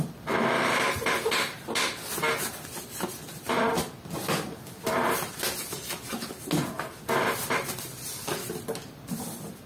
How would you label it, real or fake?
real